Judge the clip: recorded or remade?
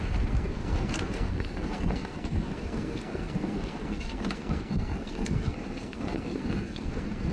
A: remade